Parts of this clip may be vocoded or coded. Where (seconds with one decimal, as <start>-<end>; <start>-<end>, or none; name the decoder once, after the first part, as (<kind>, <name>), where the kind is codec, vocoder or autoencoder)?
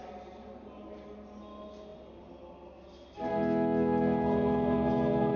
none